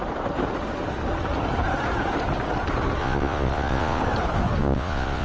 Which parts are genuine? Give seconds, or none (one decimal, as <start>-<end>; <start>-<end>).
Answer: 0.0-3.0; 4.0-4.6